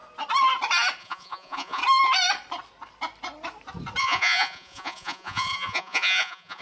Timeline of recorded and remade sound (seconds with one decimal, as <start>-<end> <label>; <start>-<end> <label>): 0.0-1.0 recorded; 1.0-1.8 remade; 1.8-4.0 recorded; 4.0-6.6 remade

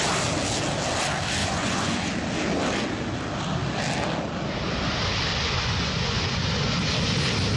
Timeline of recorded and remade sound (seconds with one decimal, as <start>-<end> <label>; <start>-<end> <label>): 0.0-1.4 recorded; 1.4-2.1 remade; 2.1-5.3 recorded; 5.3-6.9 remade; 6.9-7.6 recorded

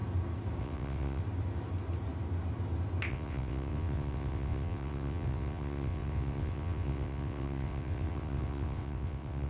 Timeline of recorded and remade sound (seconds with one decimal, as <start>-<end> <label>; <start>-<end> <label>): 0.0-0.6 recorded; 0.6-1.2 remade; 1.2-3.1 recorded; 3.1-9.5 remade

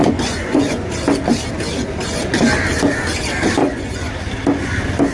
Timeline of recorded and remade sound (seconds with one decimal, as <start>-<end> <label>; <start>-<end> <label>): 0.0-0.8 remade; 0.8-3.6 recorded; 3.6-4.1 remade; 4.1-5.1 recorded